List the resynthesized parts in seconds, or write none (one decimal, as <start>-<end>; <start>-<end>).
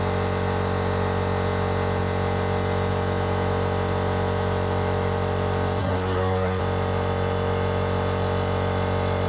5.8-6.6